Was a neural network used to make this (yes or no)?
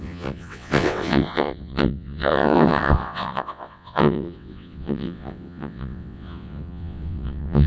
yes